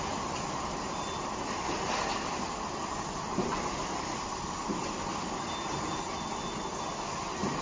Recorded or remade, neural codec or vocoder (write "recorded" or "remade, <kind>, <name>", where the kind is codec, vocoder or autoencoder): recorded